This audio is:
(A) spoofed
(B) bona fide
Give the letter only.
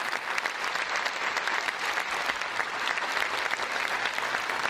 B